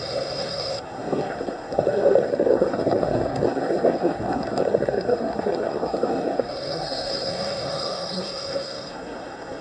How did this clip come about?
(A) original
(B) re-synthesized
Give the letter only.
B